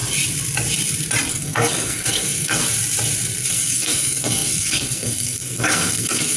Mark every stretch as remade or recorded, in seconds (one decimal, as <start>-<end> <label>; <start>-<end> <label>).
0.0-1.3 recorded; 1.3-2.6 remade; 2.6-3.5 recorded; 3.5-6.4 remade